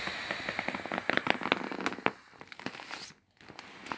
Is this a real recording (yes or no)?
yes